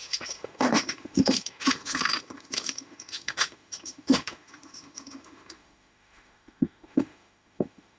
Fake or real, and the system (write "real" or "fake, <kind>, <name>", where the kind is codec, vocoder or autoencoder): fake, autoencoder, DAC-VAE